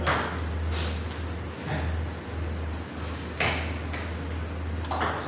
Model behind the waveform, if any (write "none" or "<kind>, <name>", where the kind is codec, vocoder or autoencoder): none